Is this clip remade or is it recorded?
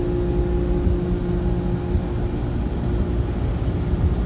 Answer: recorded